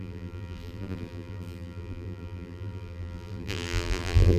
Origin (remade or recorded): remade